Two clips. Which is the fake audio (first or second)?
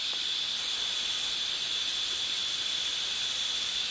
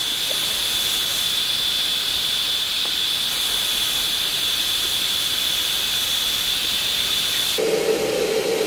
first